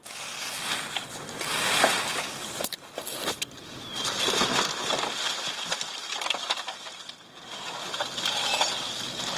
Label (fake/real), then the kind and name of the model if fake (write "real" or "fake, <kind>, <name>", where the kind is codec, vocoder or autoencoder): real